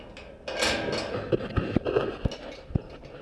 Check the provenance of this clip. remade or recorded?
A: recorded